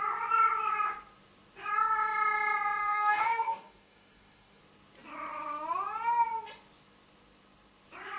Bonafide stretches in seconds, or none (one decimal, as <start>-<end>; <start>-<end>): 0.0-2.8; 4.6-8.2